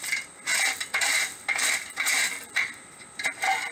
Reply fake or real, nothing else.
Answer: real